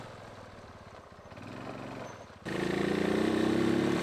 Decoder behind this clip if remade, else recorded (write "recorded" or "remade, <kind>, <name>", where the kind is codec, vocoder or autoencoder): recorded